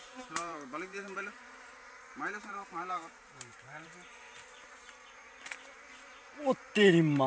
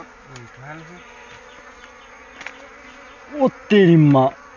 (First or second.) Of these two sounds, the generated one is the first